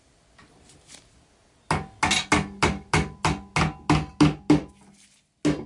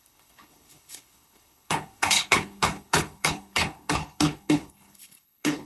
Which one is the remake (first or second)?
second